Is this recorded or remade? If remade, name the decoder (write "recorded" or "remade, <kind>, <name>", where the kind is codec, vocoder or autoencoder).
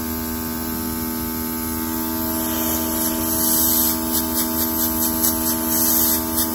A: recorded